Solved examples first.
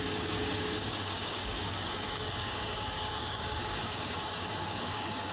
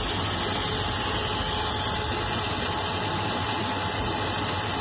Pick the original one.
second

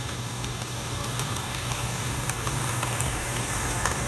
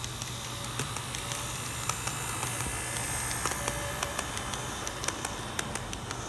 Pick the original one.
second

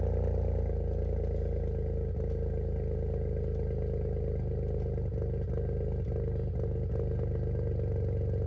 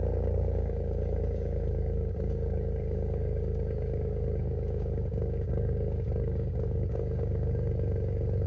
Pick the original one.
first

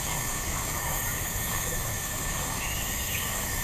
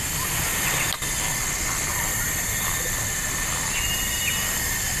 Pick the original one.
second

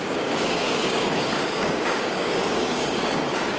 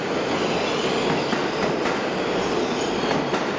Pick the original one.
second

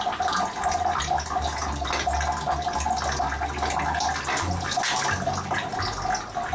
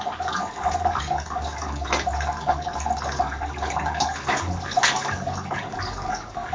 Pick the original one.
first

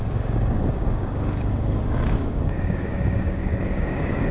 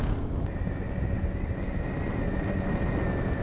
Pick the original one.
second